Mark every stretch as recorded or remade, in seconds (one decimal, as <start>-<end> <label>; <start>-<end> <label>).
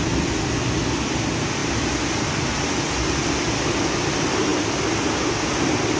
0.0-6.0 recorded